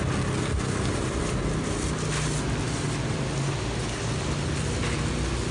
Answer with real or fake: real